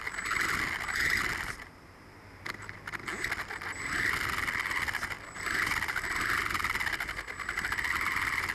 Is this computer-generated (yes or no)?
no